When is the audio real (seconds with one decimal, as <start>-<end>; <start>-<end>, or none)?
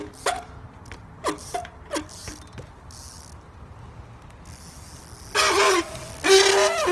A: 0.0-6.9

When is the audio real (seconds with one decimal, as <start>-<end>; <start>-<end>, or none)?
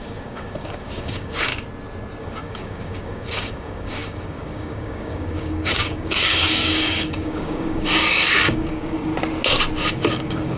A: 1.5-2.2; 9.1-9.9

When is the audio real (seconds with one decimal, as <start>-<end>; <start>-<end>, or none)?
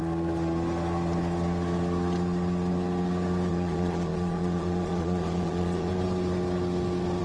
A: 0.0-3.5; 5.9-7.2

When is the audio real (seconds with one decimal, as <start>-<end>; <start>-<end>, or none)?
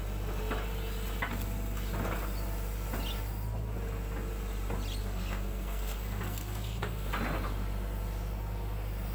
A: 0.0-5.0; 7.1-9.1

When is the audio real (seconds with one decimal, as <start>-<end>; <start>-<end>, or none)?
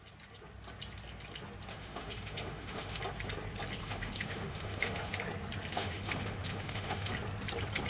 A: 0.0-1.7; 3.0-3.8; 5.2-5.7; 7.1-7.9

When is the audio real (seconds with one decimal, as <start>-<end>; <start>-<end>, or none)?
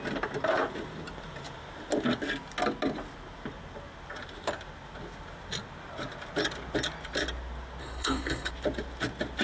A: 0.0-7.8; 8.5-9.4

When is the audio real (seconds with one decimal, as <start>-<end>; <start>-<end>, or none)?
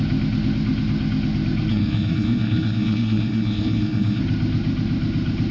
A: 0.0-1.7; 4.2-5.5